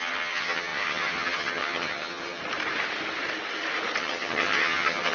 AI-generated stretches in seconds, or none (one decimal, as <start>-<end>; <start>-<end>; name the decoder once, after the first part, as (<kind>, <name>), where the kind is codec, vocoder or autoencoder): 0.0-2.4 (vocoder, HiFi-GAN); 4.0-5.1

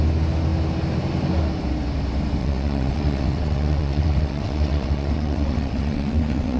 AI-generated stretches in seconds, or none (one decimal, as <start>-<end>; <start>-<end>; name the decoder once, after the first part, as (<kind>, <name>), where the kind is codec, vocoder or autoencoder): 2.4-6.6 (vocoder, WaveNeXt)

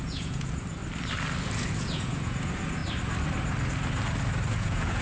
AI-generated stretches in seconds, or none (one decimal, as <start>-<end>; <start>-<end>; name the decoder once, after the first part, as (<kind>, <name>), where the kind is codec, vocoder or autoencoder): 0.0-0.8 (vocoder, Vocos); 1.7-2.8; 4.5-5.0

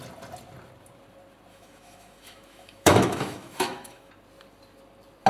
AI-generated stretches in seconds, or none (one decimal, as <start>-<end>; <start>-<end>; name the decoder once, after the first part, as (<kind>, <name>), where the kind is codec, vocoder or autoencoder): 1.5-4.1 (autoencoder, DAC-VAE)

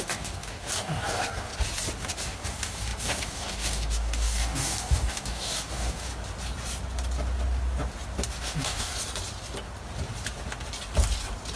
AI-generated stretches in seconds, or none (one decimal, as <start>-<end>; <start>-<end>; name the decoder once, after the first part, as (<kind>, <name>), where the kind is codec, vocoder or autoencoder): 0.0-1.5 (codec, DAC); 2.0-6.1; 8.4-8.9

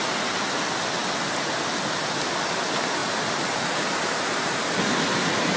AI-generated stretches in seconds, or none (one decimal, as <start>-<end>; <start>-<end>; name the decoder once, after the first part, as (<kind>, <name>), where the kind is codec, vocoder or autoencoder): 3.0-4.1 (vocoder, BigVGAN v2)